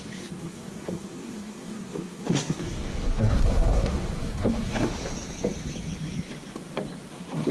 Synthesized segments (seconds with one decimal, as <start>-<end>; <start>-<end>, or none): 0.0-4.9; 7.1-7.5